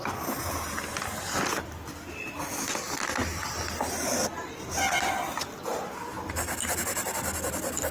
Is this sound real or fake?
real